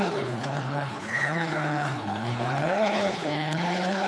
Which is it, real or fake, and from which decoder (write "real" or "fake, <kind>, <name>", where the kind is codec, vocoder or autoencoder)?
fake, codec, HILCodec